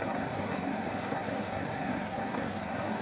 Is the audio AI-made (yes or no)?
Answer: yes